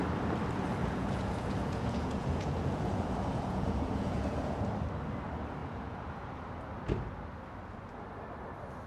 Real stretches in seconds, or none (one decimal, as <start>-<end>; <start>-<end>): 0.0-0.8; 4.7-5.6; 6.4-8.9